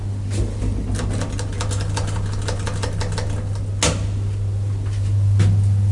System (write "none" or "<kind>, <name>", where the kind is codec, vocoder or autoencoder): none